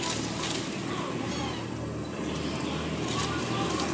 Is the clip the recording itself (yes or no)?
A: yes